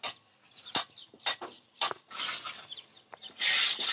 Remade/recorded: recorded